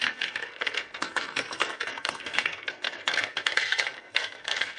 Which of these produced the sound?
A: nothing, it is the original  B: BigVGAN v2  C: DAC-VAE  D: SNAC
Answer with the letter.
D